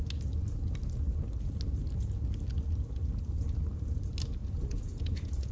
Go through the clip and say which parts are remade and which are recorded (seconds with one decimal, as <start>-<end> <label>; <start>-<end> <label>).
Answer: 0.0-4.4 recorded; 4.4-5.5 remade